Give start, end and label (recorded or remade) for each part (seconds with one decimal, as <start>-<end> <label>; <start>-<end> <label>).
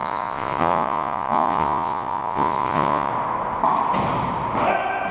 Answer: 0.0-3.1 remade; 3.1-5.1 recorded